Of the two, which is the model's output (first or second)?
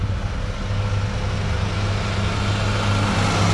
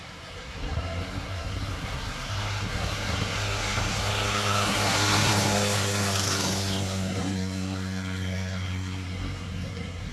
second